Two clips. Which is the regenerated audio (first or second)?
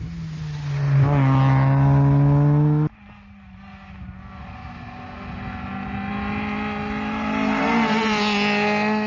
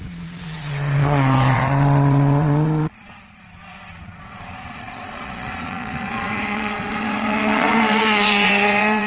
second